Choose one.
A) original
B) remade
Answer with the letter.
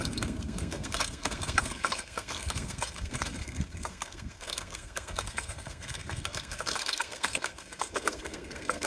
B